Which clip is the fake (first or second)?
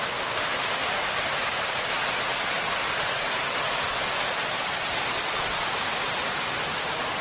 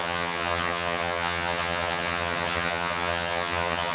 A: second